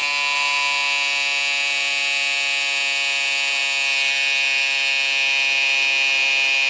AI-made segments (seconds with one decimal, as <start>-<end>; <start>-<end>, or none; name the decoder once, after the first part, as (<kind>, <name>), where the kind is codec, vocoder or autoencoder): none